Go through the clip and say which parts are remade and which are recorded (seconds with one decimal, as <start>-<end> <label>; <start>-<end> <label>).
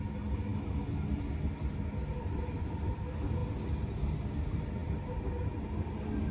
0.0-2.1 recorded; 2.1-2.9 remade; 2.9-6.3 recorded